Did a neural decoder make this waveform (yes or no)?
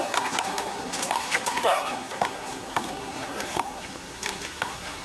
yes